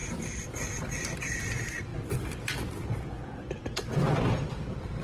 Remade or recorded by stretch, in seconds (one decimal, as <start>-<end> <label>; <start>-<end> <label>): 0.0-5.0 remade